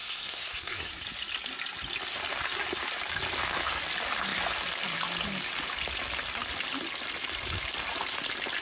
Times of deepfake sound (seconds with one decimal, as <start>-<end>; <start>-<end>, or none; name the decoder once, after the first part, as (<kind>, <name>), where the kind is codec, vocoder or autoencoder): 0.0-0.9 (codec, SNAC)